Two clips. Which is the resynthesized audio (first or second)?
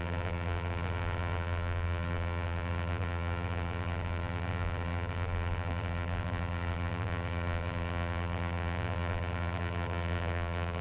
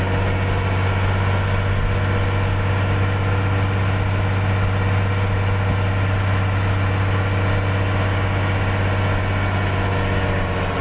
first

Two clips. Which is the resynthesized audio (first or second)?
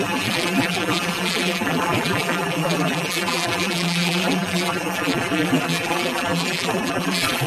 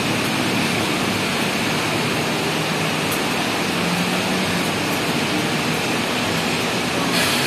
first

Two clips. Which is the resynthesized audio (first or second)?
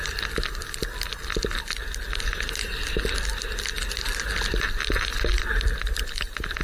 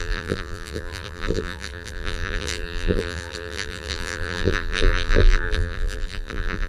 second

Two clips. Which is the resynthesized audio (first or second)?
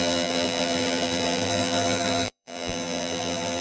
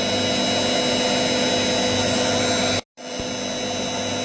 first